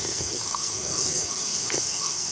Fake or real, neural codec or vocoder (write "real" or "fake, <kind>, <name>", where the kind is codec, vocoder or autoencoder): fake, codec, SNAC